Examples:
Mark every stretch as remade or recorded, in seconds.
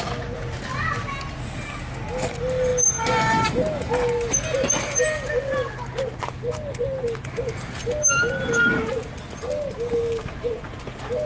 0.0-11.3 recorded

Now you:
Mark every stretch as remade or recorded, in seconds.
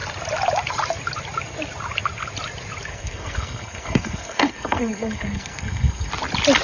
0.0-2.9 recorded; 2.9-6.1 remade; 6.1-6.6 recorded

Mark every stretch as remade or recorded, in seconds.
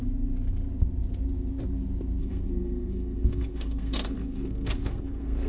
0.0-2.2 recorded; 2.2-5.5 remade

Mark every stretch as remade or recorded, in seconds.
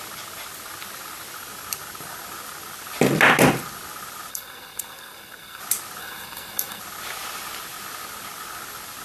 0.0-4.3 recorded; 4.3-5.6 remade; 5.6-6.0 recorded; 6.0-6.8 remade; 6.8-9.0 recorded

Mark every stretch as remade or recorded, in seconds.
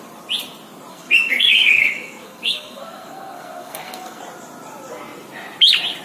0.0-0.9 recorded; 0.9-4.2 remade; 4.2-6.0 recorded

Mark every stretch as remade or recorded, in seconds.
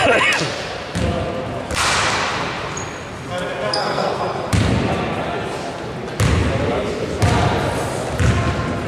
0.0-3.7 recorded; 3.7-4.2 remade; 4.2-8.9 recorded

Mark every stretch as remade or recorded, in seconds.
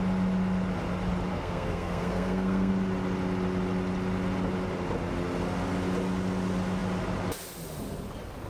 0.0-1.3 recorded; 1.3-2.7 remade; 2.7-8.5 recorded